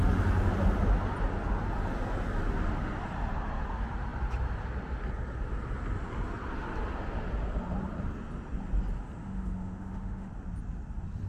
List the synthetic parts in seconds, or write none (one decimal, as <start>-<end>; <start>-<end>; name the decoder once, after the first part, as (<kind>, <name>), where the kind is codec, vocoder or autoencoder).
9.2-10.3 (autoencoder, DAC-VAE)